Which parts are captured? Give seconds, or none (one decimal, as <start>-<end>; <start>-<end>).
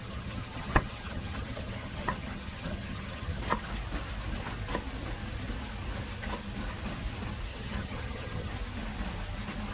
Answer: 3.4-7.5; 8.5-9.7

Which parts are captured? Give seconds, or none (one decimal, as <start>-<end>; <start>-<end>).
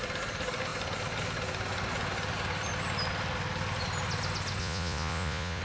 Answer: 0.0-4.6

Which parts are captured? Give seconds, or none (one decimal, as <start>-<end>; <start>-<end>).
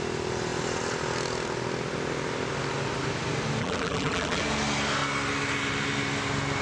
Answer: 0.0-3.6; 4.4-6.6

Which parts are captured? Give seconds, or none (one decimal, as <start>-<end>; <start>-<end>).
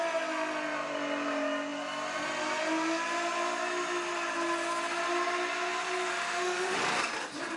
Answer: 0.0-6.1; 6.8-7.6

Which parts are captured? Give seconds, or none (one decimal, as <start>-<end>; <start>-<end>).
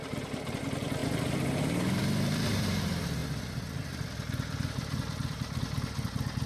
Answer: 3.2-4.7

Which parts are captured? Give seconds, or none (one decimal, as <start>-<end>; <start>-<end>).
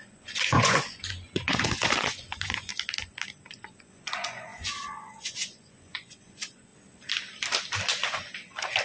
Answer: 2.7-3.5; 6.7-8.8